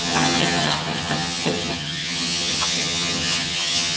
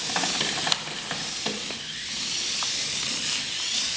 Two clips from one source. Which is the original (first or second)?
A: second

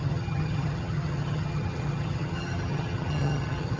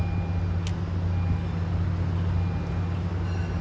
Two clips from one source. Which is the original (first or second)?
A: second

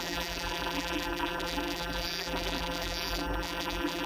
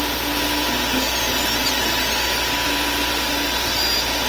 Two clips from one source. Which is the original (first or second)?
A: second